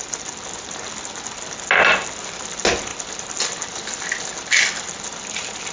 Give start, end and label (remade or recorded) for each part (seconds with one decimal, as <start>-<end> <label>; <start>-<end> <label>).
0.0-5.7 recorded